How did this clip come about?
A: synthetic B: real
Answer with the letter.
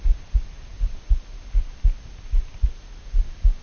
B